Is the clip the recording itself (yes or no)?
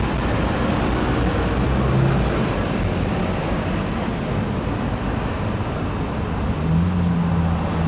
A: yes